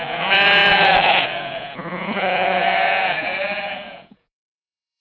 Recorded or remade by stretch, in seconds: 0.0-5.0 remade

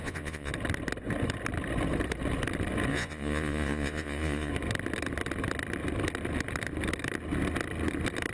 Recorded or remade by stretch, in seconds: 0.0-0.5 remade; 0.5-2.9 recorded; 2.9-4.5 remade; 4.5-8.3 recorded

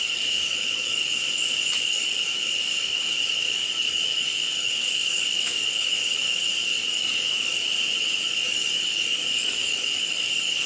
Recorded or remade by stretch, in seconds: 0.0-1.2 remade; 1.2-1.8 recorded; 1.8-10.7 remade